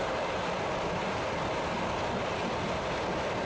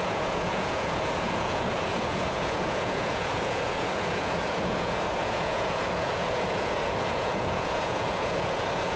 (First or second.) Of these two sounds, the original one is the first